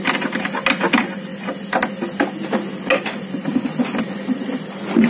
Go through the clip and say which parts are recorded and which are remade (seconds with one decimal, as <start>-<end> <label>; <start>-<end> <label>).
0.0-5.1 recorded